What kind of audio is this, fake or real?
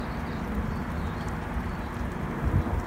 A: real